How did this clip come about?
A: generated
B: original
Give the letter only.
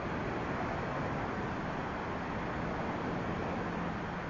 B